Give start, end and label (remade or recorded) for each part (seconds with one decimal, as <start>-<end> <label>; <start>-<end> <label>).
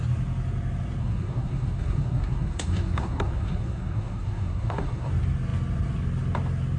0.0-1.0 recorded; 1.0-5.1 remade; 5.1-6.8 recorded